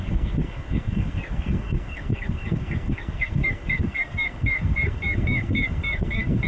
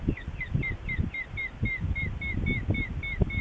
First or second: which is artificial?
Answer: first